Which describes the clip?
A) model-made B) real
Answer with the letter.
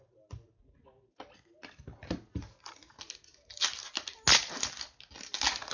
B